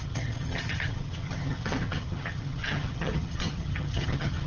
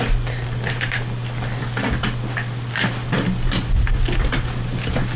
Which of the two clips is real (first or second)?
second